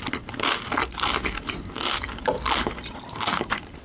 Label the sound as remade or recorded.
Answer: recorded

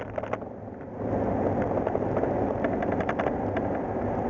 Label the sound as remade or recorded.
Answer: recorded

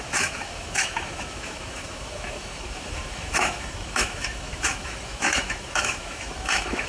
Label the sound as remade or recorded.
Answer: remade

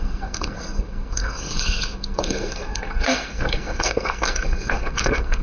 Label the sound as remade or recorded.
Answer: remade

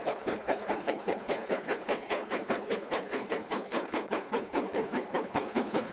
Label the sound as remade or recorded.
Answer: remade